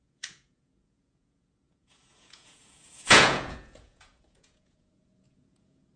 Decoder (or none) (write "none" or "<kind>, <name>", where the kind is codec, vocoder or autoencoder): vocoder, Vocos